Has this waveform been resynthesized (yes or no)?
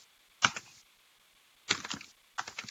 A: no